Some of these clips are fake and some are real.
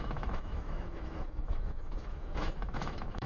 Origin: fake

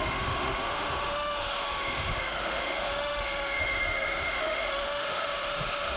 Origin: fake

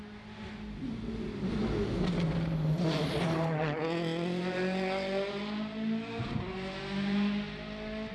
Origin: real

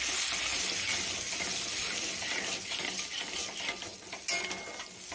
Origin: real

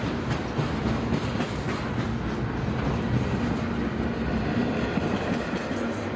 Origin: real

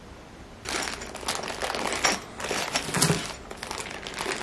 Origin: real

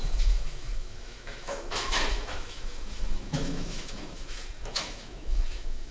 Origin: fake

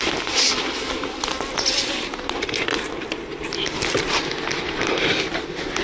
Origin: real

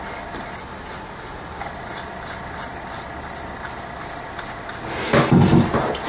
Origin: real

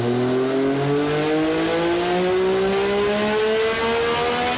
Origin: real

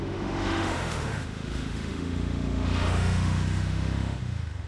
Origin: fake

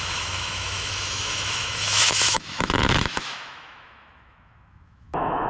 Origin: fake